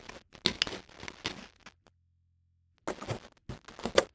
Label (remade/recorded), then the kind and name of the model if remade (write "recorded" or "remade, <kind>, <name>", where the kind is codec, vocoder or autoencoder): recorded